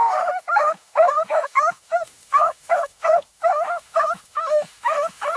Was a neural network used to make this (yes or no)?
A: yes